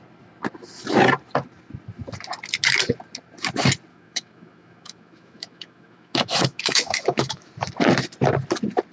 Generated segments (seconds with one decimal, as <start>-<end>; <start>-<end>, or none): 3.9-7.5